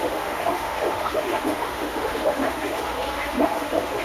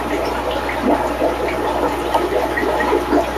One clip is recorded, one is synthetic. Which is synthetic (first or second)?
first